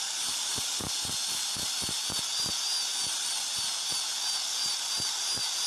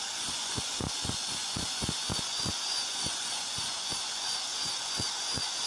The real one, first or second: first